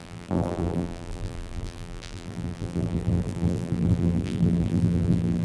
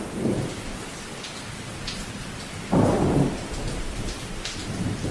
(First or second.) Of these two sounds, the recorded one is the second